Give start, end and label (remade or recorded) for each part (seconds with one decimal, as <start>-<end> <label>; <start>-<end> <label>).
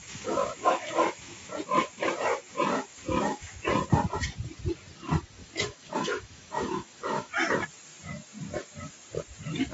0.0-1.2 remade; 1.2-2.9 recorded; 2.9-3.6 remade; 3.6-5.4 recorded; 5.4-7.3 remade; 7.3-9.7 recorded